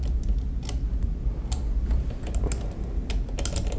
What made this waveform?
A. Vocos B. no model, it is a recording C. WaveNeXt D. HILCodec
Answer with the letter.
B